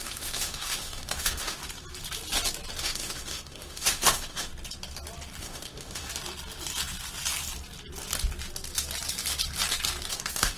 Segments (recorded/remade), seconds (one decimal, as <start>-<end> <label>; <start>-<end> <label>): 0.0-1.6 remade; 1.6-2.8 recorded; 2.8-4.5 remade; 4.5-5.4 recorded; 5.4-6.1 remade; 6.1-10.1 recorded; 10.1-10.6 remade